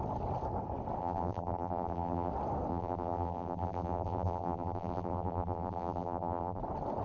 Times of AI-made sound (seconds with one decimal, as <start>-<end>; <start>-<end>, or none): 1.0-2.3; 2.7-6.6